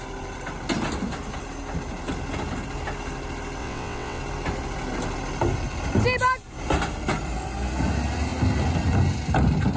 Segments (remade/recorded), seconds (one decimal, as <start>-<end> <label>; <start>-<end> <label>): 0.0-3.6 recorded; 3.6-4.2 remade; 4.2-9.8 recorded